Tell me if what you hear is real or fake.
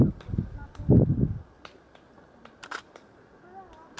real